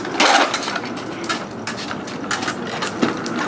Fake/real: real